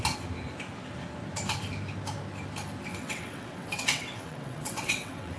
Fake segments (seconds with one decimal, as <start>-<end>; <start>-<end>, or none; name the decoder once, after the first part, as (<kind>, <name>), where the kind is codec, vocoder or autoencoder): 2.9-5.4 (vocoder, WaveNeXt)

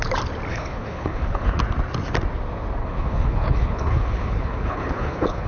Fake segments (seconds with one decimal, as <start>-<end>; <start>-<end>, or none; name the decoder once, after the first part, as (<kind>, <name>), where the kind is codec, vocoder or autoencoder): 0.5-1.6 (codec, HILCodec); 2.8-5.5

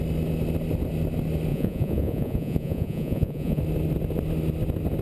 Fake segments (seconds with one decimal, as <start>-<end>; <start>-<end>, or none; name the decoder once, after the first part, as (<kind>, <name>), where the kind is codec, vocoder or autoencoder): 1.5-3.6 (vocoder, Vocos)

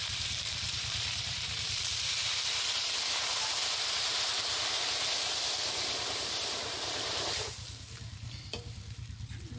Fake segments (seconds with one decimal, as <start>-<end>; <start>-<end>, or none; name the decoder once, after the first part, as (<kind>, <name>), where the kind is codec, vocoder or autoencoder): 0.0-2.1 (vocoder, BigVGAN v2); 3.6-4.4

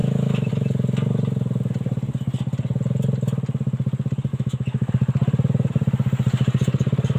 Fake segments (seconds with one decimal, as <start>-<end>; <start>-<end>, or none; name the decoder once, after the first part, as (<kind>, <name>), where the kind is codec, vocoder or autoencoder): 0.0-0.5 (autoencoder, DAC-VAE); 4.3-4.9